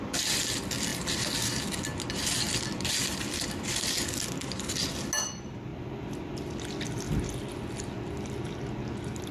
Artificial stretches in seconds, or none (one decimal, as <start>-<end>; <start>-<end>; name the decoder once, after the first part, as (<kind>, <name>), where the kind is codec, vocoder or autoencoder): none